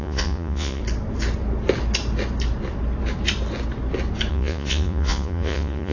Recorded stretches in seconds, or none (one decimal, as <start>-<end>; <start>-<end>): 0.8-4.3